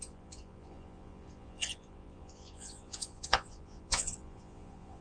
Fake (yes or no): yes